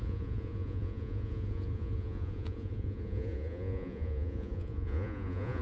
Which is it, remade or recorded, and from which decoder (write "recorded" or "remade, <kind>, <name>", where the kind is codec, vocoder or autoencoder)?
remade, vocoder, Vocos